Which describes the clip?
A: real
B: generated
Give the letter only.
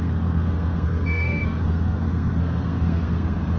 B